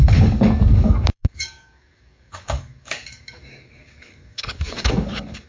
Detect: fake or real fake